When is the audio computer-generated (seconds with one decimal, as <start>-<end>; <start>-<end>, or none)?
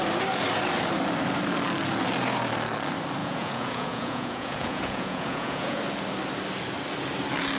3.2-5.8